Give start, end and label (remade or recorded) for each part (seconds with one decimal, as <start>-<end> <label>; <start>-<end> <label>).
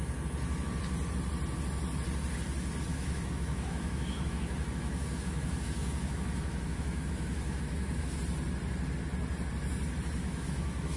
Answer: 0.0-2.9 recorded; 2.9-8.2 remade; 8.2-10.2 recorded; 10.2-11.0 remade